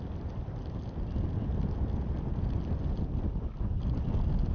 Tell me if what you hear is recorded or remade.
recorded